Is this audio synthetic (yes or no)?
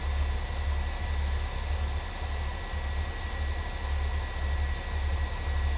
no